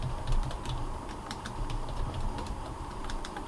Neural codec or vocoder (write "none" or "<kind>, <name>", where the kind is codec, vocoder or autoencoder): vocoder, BigVGAN v2